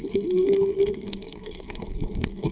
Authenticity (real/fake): fake